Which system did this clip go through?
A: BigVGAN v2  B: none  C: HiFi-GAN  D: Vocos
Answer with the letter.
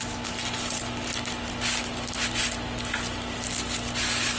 B